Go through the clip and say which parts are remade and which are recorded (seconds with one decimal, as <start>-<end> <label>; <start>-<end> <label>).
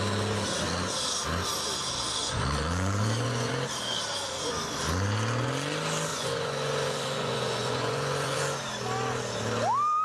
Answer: 0.0-2.2 recorded; 2.2-3.5 remade; 3.5-6.1 recorded; 6.1-8.6 remade; 8.6-10.0 recorded